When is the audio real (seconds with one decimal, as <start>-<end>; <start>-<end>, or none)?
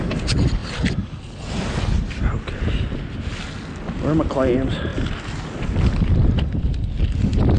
0.0-7.6